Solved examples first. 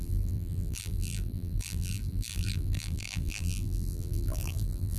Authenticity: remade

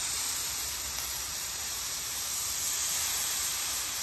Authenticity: remade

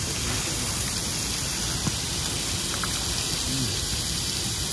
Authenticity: recorded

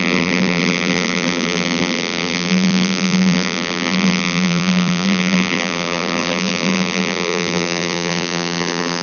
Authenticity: remade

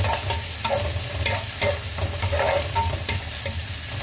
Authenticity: recorded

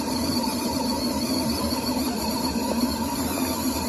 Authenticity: remade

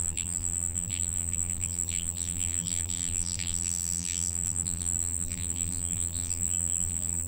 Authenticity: remade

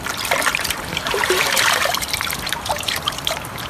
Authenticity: remade